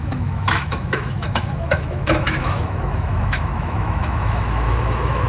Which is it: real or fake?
fake